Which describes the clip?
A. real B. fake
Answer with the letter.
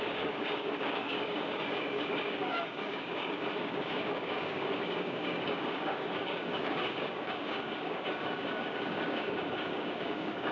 B